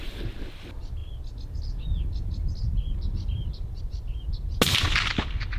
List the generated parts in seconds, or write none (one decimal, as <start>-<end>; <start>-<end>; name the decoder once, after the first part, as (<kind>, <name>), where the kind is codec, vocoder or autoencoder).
none